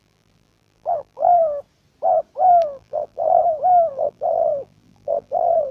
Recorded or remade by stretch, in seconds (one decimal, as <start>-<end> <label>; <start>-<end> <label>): 0.0-1.4 remade; 1.4-2.5 recorded; 2.5-3.4 remade; 3.4-3.9 recorded; 3.9-5.7 remade